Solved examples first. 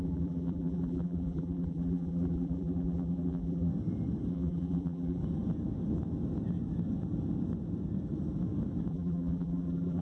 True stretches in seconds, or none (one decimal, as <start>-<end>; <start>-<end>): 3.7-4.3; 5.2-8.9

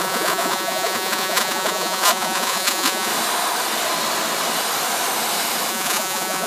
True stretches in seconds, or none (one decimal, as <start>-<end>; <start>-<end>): 3.1-5.7

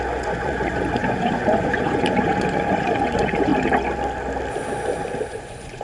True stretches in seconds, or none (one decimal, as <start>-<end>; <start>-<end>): 3.5-5.3

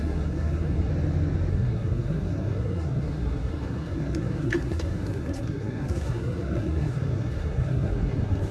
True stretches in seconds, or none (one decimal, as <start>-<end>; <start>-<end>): 0.9-1.5